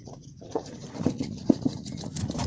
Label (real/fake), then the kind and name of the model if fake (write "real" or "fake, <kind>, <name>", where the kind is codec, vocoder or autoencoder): fake, vocoder, Vocos